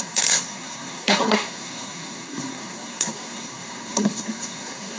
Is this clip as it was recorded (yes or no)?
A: no